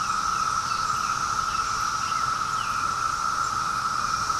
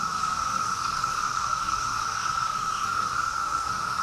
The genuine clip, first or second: first